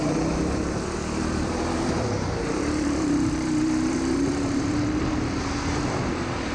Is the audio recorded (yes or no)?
no